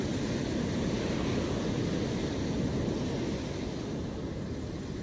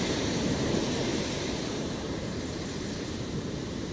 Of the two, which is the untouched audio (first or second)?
first